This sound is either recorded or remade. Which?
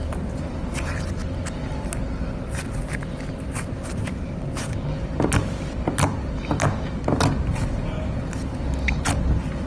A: recorded